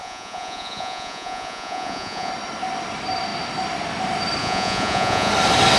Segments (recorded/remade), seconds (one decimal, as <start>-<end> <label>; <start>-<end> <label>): 0.0-2.3 remade; 2.3-4.4 recorded; 4.4-5.3 remade; 5.3-5.8 recorded